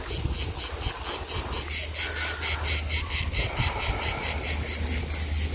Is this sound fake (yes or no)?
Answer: no